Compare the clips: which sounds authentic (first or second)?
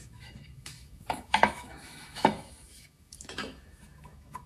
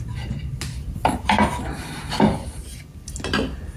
second